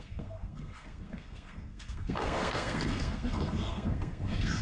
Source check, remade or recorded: remade